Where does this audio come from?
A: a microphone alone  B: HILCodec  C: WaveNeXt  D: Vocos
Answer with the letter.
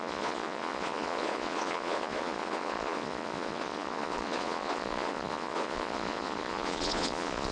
D